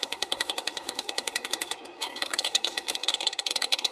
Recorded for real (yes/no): no